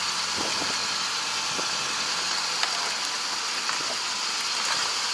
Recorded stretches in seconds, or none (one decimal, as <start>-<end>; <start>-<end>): 0.0-5.1